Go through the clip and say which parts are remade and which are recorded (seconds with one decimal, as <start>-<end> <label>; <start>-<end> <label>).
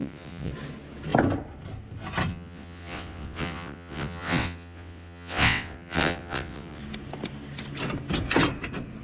0.0-0.5 remade; 0.5-2.3 recorded; 2.3-6.8 remade; 6.8-9.0 recorded